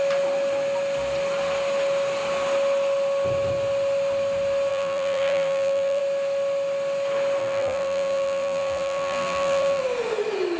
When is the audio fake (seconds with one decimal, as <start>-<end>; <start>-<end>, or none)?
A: 4.7-6.0; 7.4-9.8